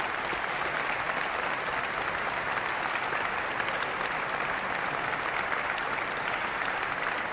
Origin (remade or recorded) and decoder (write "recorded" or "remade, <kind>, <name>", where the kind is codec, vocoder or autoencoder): recorded